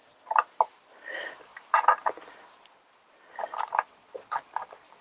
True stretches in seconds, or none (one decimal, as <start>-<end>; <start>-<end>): 0.0-5.0